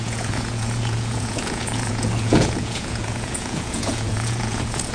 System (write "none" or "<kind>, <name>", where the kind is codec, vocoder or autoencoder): vocoder, Vocos